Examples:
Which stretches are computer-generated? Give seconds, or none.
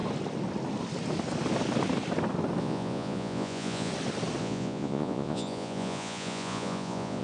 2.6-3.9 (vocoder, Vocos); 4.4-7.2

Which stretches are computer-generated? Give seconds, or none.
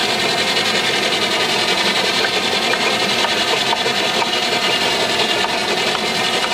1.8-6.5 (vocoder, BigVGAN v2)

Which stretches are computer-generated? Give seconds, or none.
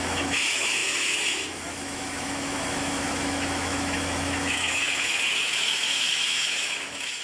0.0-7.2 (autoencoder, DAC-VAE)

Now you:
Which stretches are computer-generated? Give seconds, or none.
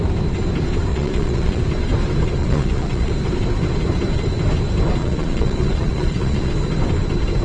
0.9-1.6 (vocoder, Vocos); 2.4-3.1; 5.0-6.5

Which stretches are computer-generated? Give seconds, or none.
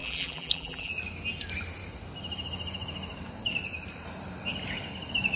0.0-0.9 (vocoder, BigVGAN v2)